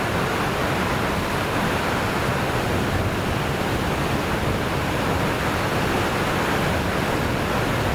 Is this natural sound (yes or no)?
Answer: yes